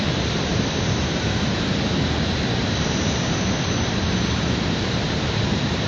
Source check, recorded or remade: remade